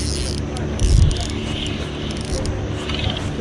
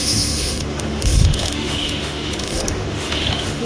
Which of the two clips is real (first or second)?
first